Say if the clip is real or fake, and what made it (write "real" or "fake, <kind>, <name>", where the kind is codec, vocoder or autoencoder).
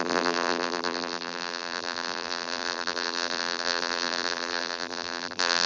fake, vocoder, BigVGAN v2